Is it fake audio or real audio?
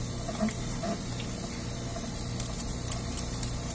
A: real